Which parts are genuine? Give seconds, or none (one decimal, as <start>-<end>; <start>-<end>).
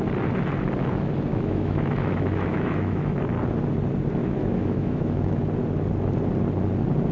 0.0-1.3; 3.2-4.2; 5.4-7.1